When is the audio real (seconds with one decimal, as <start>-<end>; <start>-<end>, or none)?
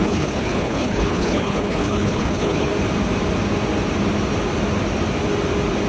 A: 2.7-5.9